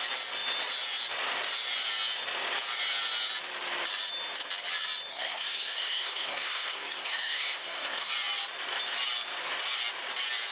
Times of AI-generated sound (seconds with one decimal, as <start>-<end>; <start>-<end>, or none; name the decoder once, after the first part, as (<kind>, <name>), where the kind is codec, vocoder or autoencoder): 5.1-8.1 (codec, SNAC)